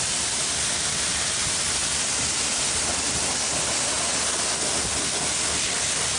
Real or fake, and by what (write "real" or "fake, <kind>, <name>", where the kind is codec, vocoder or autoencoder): real